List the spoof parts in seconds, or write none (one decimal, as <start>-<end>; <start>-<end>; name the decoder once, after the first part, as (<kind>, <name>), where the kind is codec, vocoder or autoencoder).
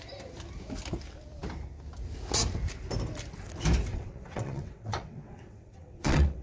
3.9-6.4 (vocoder, WaveNeXt)